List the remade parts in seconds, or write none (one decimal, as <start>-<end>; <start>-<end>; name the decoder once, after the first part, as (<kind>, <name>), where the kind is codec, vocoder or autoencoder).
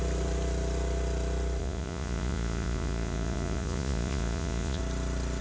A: 1.6-4.8 (vocoder, Vocos)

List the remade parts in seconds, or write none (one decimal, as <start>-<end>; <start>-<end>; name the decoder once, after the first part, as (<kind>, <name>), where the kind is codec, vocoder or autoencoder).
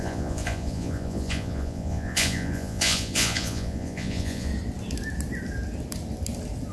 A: 0.0-4.5 (vocoder, Vocos)